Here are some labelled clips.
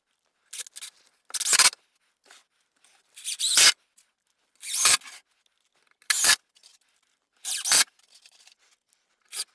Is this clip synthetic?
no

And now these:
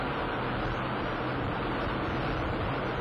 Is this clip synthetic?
no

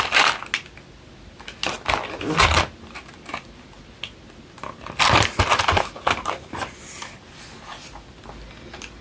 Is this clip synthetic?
no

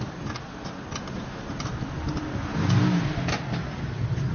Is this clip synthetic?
no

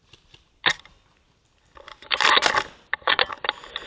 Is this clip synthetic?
no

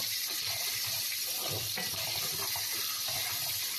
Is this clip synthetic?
yes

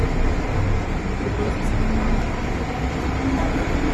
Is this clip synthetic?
yes